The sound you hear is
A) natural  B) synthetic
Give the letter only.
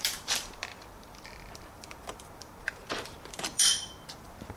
B